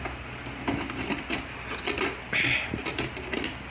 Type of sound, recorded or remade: recorded